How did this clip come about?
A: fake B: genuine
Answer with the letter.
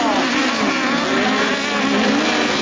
B